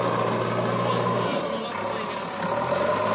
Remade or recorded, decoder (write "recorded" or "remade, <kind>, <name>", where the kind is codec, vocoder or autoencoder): recorded